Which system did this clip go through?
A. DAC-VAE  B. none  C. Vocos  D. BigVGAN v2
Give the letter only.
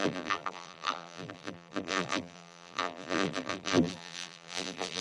D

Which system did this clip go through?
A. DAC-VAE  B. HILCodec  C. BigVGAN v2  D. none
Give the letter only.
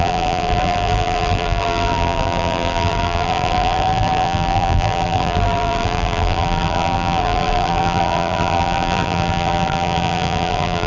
C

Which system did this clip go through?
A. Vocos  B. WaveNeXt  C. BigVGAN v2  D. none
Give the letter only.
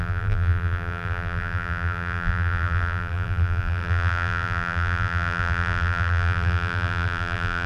C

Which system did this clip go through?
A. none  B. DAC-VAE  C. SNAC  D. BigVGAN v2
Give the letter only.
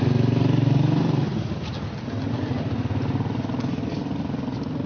A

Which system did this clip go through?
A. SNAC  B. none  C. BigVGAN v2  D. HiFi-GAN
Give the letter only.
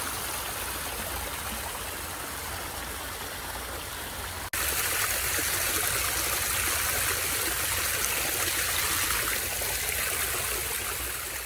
B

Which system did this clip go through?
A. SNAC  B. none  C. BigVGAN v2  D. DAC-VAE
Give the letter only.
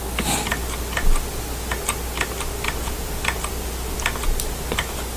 B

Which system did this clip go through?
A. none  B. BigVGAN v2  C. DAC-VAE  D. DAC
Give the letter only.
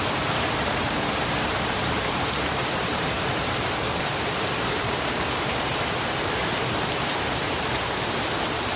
B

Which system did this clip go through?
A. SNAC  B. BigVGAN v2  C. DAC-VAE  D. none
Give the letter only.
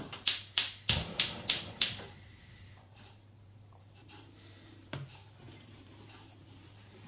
B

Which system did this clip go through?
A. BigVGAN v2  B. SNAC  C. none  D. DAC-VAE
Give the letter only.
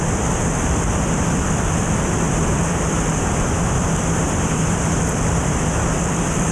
A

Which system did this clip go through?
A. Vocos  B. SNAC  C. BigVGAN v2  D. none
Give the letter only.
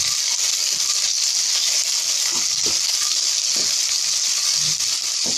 D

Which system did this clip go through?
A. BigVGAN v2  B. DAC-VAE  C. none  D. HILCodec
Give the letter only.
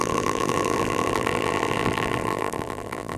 A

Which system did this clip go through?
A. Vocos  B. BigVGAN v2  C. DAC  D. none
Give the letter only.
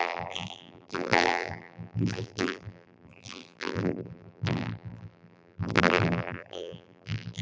B